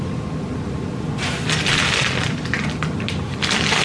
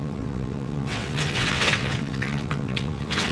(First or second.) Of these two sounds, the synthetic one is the second